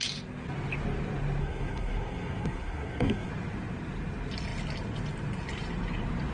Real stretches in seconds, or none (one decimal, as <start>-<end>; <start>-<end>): 0.0-1.4; 3.3-6.3